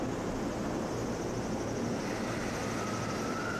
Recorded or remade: recorded